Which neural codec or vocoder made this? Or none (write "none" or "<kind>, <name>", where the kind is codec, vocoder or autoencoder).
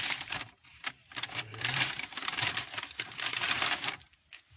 vocoder, BigVGAN v2